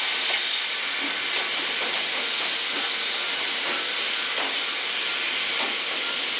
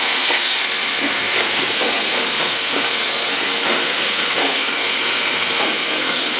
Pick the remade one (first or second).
second